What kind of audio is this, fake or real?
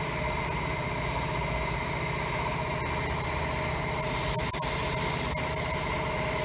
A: real